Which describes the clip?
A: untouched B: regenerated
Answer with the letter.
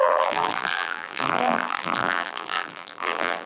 B